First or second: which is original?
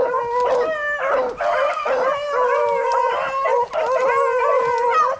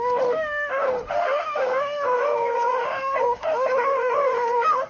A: first